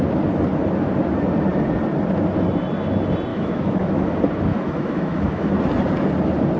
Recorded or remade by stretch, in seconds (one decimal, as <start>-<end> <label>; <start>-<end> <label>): 0.0-3.3 recorded; 3.3-4.1 remade; 4.1-4.5 recorded; 4.5-5.5 remade; 5.5-6.6 recorded